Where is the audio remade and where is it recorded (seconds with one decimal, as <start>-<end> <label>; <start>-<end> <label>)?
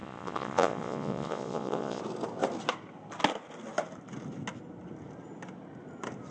0.0-2.0 remade; 2.0-6.3 recorded